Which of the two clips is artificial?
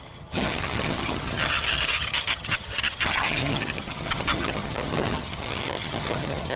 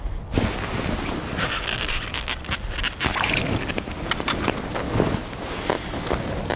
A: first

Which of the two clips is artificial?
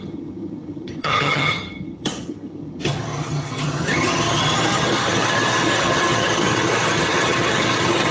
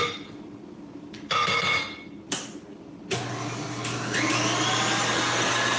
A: first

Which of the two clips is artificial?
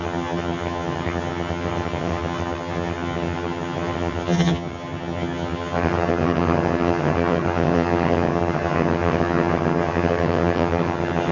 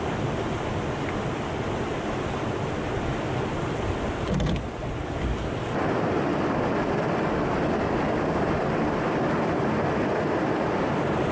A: first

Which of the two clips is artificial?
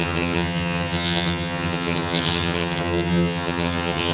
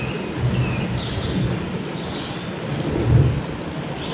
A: first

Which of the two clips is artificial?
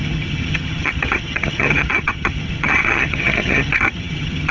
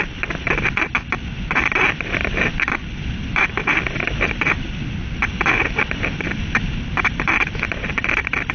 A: first